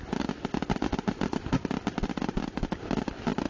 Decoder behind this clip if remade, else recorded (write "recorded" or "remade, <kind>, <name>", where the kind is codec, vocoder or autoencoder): recorded